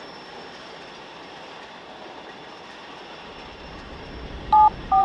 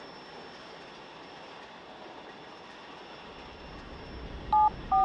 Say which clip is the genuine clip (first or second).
second